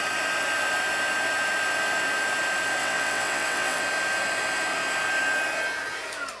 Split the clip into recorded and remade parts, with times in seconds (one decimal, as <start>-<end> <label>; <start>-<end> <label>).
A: 0.0-2.8 recorded; 2.8-3.8 remade; 3.8-6.4 recorded